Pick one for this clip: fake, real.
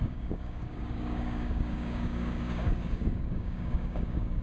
fake